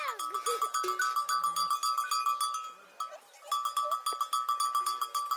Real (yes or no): yes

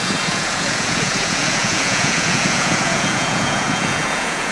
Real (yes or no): no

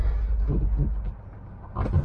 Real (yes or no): yes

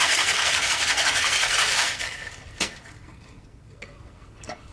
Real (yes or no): no